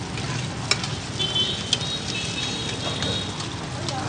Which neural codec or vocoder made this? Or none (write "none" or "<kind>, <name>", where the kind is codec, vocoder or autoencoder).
none